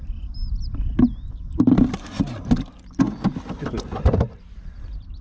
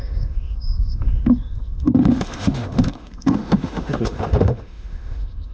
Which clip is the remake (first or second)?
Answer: second